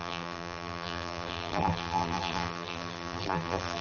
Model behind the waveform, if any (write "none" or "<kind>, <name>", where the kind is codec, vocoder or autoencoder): vocoder, BigVGAN v2